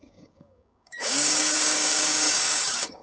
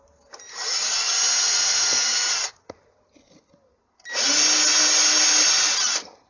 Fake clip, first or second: first